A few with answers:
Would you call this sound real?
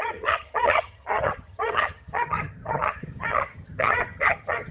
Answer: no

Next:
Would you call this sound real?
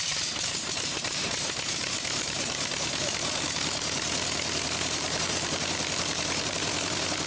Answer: no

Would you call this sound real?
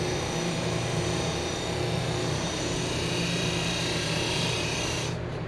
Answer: no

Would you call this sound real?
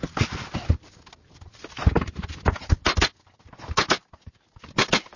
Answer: yes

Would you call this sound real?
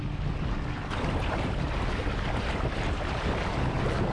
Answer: yes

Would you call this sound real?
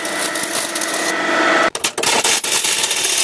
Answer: yes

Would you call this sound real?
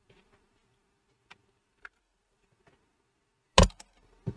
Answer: yes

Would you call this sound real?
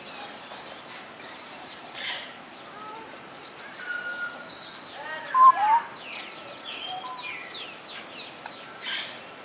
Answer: yes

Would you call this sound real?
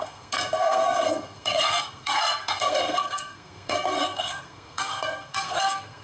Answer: no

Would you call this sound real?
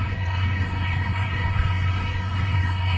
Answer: no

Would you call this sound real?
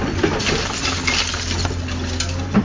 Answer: yes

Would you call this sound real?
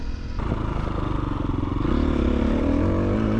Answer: yes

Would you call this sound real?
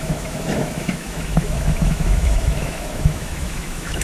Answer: no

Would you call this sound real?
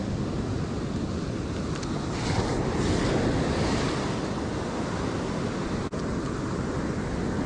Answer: yes